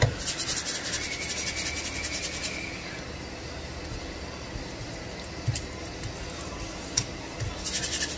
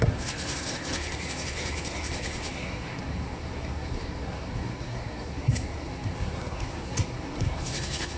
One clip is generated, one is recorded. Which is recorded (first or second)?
first